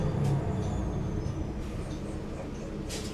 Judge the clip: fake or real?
real